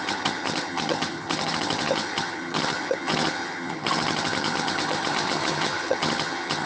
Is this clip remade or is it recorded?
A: remade